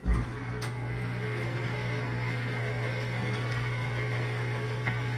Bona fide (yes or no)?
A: no